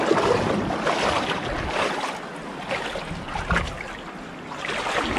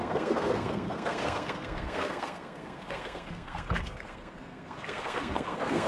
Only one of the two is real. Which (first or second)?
first